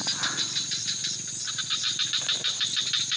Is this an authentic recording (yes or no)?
yes